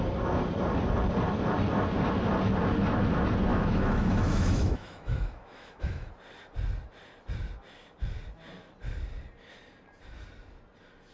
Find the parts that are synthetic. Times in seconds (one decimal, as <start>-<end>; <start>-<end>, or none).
3.5-6.1